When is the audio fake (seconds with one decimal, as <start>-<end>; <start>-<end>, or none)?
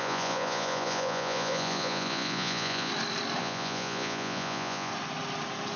0.0-2.9; 3.4-4.9